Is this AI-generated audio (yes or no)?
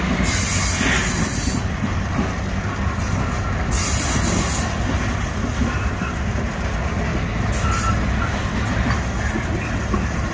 no